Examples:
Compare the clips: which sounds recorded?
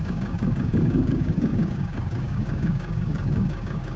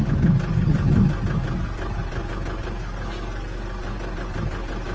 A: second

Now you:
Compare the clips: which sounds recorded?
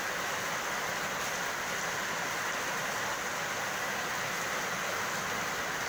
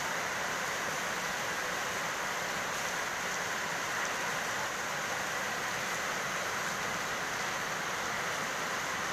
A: first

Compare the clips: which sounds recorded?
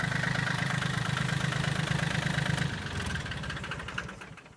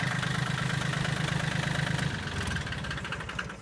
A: second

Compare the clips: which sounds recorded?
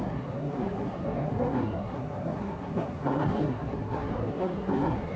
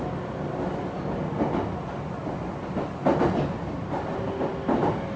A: second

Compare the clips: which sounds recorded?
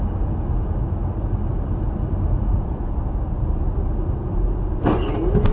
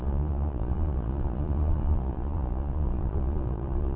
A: first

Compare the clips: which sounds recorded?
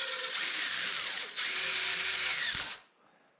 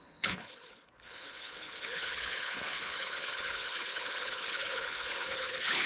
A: first